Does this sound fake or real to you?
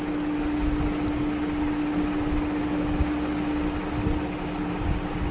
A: real